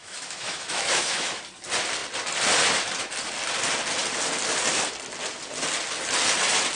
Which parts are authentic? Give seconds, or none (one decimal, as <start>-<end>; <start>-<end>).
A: 1.4-6.8